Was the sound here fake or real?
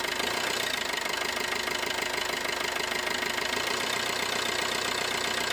real